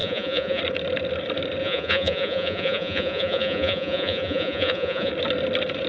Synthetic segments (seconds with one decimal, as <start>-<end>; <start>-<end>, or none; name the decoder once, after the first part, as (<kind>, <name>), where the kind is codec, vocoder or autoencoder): 0.0-0.6 (vocoder, Vocos); 1.6-5.1